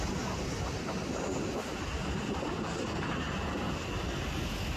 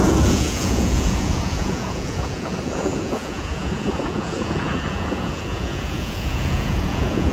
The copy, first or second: second